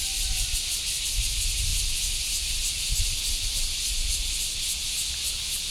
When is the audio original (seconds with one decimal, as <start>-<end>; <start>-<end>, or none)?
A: 0.0-5.7